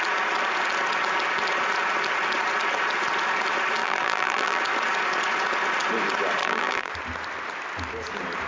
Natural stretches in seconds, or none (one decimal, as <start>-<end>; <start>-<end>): 0.0-3.8; 4.6-6.4; 6.9-8.5